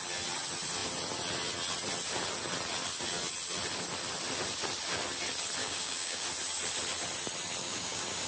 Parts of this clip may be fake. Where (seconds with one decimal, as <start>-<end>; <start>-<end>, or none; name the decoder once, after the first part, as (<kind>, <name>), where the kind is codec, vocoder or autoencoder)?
5.6-6.2 (codec, DAC); 7.6-8.3